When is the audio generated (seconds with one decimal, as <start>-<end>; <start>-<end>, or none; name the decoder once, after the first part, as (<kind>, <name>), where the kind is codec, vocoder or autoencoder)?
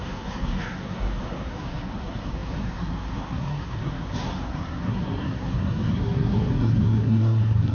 0.0-7.7 (codec, SNAC)